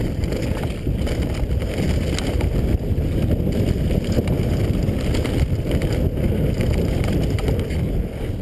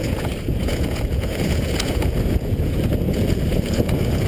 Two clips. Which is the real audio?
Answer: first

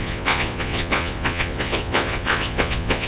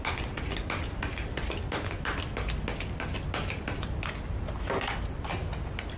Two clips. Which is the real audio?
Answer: second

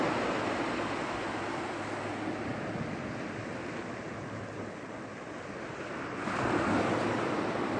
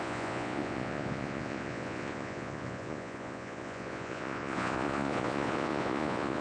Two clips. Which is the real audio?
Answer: first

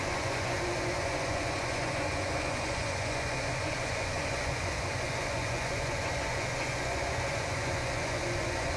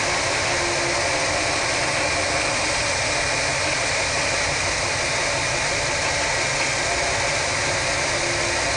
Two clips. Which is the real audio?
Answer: second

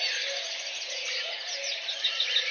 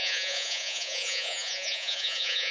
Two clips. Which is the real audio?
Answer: first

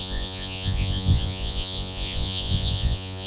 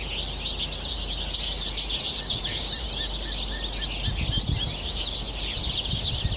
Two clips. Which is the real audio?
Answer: second